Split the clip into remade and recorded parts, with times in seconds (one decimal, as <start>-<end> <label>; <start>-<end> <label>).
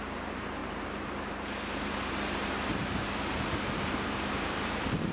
0.0-0.6 remade; 0.6-3.7 recorded; 3.7-5.1 remade